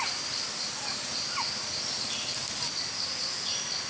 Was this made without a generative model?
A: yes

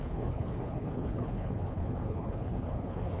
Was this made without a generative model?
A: no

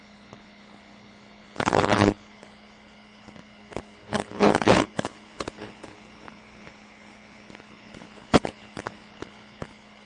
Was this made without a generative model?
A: no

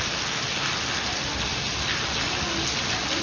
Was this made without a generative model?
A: yes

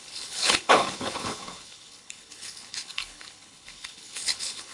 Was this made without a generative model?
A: no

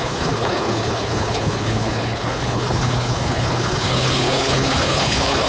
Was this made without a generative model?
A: no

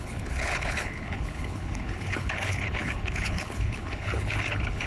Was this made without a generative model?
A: no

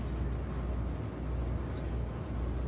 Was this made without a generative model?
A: yes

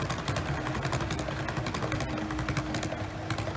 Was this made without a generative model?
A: yes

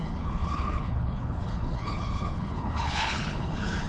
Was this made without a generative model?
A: no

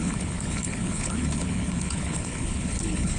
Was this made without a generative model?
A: no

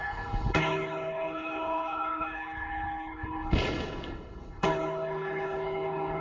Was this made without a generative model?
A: no